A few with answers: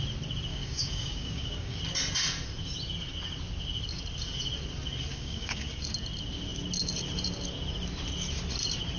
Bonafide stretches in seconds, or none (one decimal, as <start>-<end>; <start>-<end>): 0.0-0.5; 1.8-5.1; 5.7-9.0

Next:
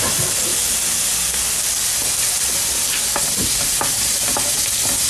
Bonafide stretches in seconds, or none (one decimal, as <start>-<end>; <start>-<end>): 0.0-5.1

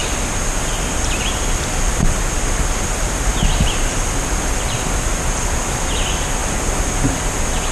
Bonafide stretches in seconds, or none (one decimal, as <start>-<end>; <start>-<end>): 0.0-7.7

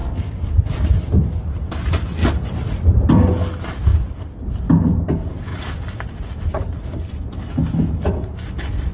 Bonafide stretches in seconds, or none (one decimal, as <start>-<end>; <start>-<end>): 0.0-8.9

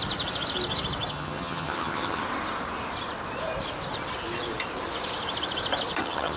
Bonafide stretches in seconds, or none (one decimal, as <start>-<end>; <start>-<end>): 0.0-1.1; 2.2-6.0

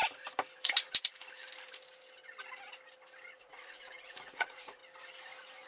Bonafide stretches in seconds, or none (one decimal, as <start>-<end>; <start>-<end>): 0.0-3.4; 4.8-5.7

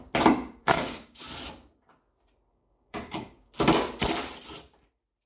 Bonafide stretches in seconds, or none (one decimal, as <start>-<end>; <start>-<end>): 0.0-0.6; 1.2-2.5; 3.5-5.3